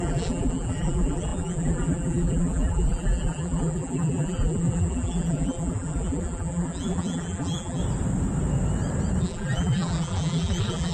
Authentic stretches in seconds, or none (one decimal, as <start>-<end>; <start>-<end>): 7.8-9.2